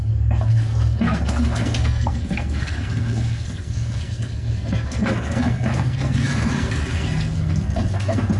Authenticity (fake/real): fake